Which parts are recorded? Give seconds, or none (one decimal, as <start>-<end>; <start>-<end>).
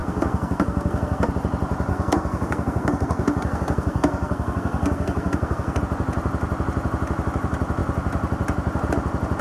1.3-1.9; 5.8-9.4